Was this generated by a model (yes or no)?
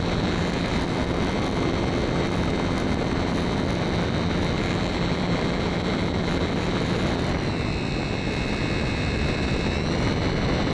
no